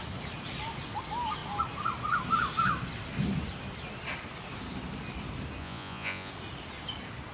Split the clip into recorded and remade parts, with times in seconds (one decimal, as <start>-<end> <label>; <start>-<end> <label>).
0.0-5.6 recorded; 5.6-6.3 remade; 6.3-7.3 recorded